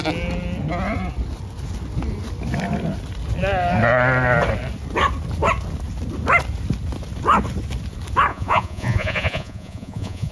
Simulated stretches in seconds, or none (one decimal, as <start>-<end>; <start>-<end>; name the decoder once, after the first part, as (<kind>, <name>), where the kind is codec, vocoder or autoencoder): 8.3-10.3 (vocoder, Vocos)